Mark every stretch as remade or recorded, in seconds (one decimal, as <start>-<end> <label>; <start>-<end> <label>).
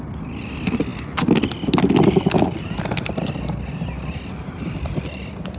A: 0.0-5.6 recorded